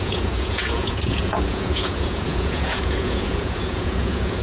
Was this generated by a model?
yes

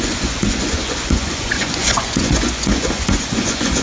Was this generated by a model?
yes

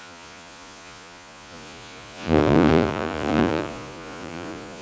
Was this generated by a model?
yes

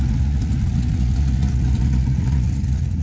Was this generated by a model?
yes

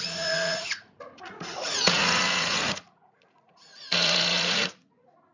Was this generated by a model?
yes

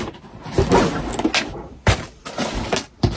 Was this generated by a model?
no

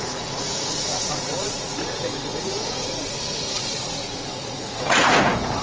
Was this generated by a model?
yes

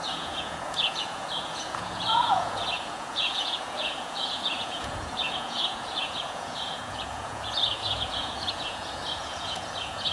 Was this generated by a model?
yes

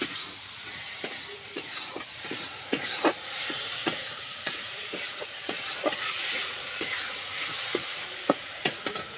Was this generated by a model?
yes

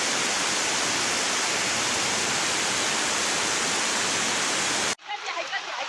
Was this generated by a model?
no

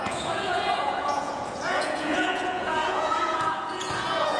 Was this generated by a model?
yes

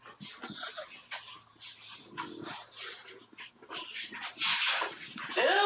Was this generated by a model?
no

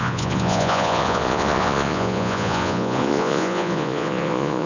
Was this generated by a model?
yes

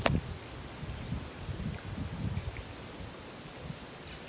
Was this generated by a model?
no